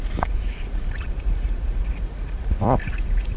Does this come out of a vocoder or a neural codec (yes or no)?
yes